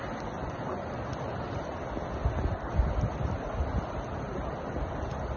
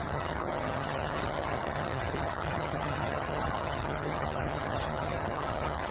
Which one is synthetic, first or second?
second